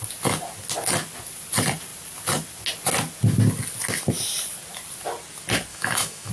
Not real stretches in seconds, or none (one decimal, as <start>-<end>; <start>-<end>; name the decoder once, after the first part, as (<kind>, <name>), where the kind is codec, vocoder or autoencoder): 5.7-6.3 (autoencoder, DAC-VAE)